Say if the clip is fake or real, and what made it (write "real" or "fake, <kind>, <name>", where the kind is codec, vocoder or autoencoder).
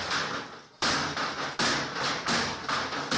real